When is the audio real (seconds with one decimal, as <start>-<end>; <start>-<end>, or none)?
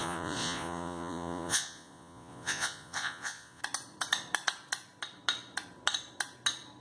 3.6-6.8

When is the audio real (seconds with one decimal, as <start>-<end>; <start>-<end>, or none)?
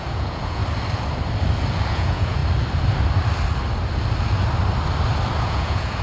0.6-1.9; 2.4-5.4